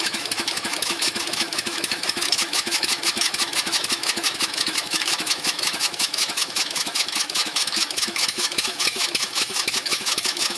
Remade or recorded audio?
remade